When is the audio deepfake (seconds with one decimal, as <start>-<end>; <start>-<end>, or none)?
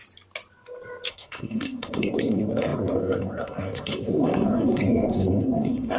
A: 1.1-6.0